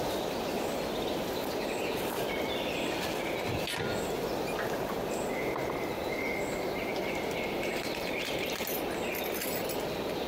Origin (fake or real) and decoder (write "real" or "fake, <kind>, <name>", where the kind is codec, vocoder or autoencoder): real